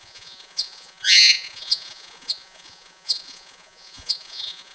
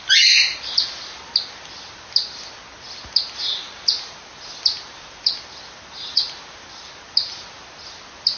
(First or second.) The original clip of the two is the second